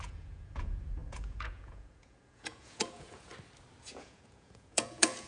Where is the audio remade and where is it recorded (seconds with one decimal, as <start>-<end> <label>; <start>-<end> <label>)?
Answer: 0.0-3.3 remade; 3.3-3.8 recorded; 3.8-5.3 remade